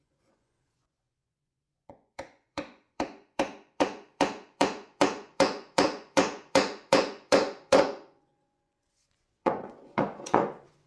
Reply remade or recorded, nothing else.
remade